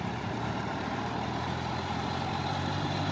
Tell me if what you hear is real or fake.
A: fake